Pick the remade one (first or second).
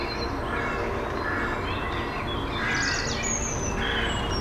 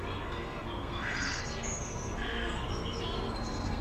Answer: second